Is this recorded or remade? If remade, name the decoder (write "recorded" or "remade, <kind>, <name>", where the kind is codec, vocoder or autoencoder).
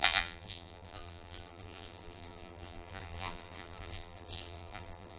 remade, vocoder, BigVGAN v2